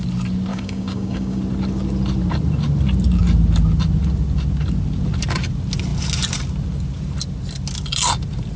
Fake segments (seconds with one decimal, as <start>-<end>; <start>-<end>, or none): 0.5-1.4